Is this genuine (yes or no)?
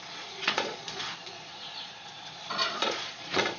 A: no